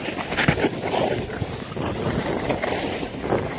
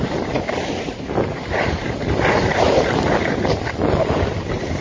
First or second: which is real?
first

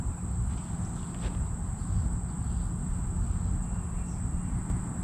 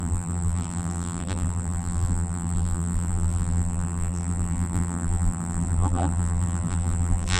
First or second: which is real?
first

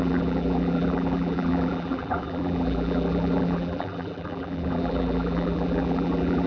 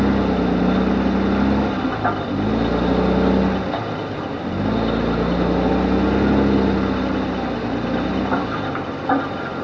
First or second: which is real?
second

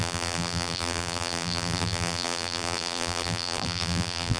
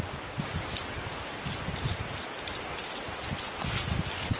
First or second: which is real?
second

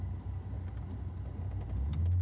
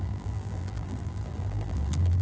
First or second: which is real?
first